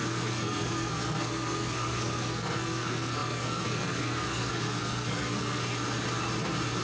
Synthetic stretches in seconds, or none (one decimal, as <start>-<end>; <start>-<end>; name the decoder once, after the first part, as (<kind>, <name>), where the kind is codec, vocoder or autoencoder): 0.0-5.6 (codec, SNAC)